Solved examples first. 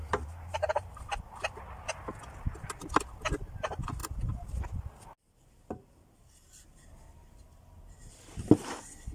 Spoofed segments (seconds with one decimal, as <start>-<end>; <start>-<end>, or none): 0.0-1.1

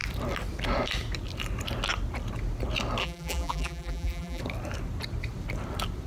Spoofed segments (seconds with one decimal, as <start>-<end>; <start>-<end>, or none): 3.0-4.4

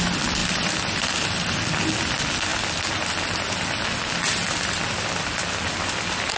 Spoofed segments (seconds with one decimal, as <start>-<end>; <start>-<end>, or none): 0.4-1.5